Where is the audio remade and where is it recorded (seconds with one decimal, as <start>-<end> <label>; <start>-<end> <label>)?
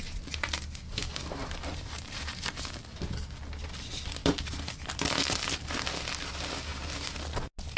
0.0-1.4 recorded; 1.4-2.5 remade; 2.5-7.8 recorded